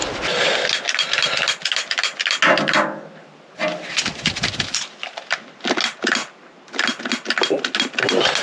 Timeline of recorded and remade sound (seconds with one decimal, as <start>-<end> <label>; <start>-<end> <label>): 0.0-8.4 recorded